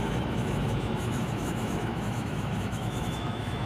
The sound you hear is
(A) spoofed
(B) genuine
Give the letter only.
A